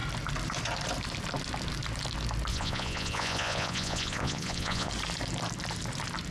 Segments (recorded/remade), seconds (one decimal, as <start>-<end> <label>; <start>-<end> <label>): 0.0-2.5 recorded; 2.5-4.9 remade; 4.9-6.3 recorded